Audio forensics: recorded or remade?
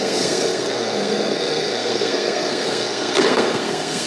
remade